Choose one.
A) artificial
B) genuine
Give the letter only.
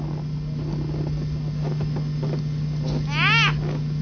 B